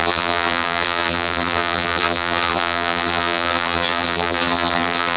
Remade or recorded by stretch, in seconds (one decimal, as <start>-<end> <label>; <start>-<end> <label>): 0.0-5.2 remade